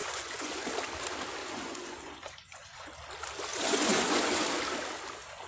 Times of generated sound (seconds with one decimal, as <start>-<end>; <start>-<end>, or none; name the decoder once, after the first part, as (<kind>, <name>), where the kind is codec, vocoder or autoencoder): 0.0-0.7 (vocoder, Vocos); 1.4-2.9; 3.5-4.4